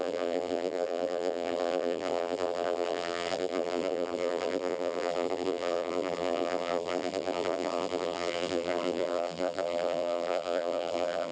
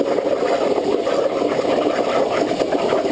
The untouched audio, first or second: second